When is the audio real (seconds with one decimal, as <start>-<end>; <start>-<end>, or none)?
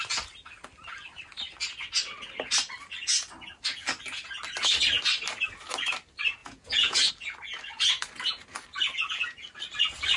0.0-6.4; 7.1-10.2